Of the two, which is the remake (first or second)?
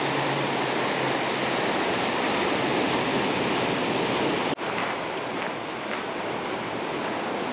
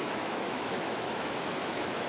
second